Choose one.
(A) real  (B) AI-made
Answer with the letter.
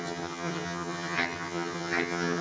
B